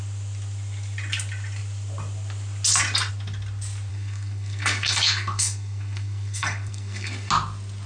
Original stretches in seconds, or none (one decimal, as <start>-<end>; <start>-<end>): 0.0-3.9; 7.3-7.9